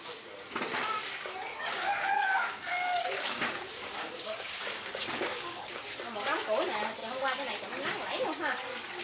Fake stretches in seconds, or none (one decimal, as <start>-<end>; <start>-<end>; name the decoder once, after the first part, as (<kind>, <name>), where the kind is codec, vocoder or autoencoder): 1.5-5.8 (codec, DAC)